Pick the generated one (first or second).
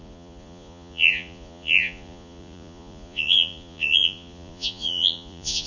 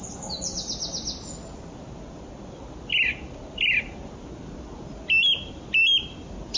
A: first